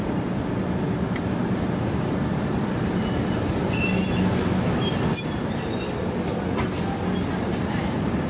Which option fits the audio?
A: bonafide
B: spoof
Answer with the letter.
A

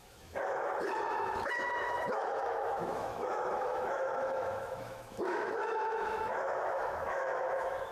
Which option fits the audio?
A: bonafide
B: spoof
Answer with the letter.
B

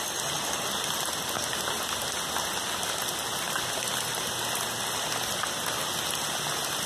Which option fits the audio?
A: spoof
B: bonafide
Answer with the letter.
B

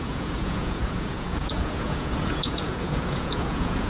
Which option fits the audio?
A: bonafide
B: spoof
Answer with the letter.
B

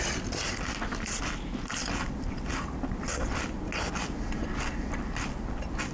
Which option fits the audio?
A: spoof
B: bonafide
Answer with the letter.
B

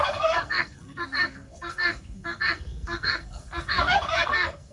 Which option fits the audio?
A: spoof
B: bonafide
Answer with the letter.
A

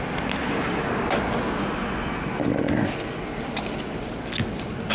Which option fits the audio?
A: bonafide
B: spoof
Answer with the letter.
A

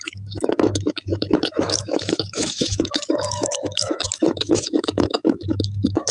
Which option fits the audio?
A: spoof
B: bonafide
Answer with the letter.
A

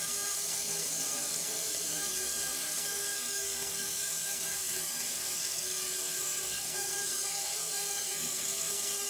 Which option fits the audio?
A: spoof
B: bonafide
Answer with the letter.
A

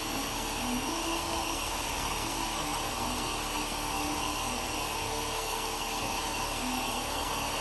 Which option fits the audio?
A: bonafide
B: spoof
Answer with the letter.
B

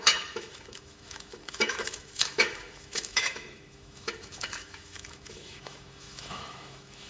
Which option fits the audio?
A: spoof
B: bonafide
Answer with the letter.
A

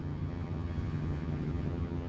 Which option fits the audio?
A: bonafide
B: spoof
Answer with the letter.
B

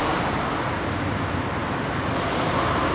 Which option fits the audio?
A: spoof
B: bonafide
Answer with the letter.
B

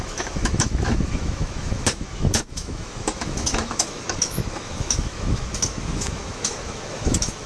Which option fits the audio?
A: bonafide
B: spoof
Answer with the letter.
B